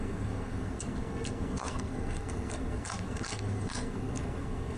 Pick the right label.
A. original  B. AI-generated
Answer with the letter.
B